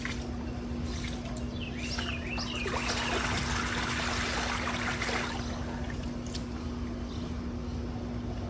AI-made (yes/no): no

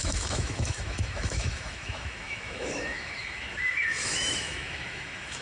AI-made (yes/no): yes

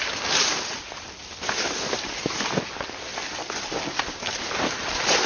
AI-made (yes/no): no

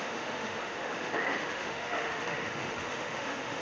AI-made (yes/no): yes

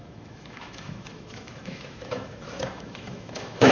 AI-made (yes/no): yes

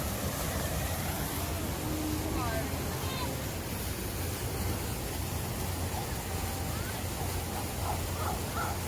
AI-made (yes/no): no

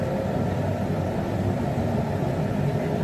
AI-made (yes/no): no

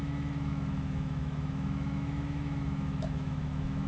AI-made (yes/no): yes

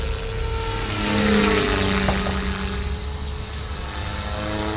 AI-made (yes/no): no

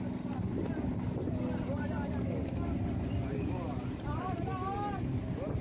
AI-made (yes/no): no